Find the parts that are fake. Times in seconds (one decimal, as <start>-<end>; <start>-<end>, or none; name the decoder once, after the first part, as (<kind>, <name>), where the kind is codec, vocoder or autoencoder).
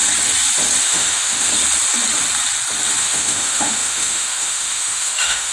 0.8-1.5 (autoencoder, DAC-VAE); 3.0-5.5